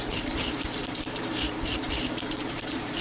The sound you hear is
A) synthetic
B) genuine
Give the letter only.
A